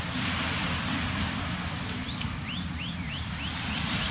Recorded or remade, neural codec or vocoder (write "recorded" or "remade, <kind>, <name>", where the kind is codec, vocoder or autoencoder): recorded